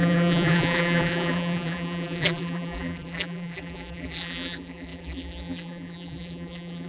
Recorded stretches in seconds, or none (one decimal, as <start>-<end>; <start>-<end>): none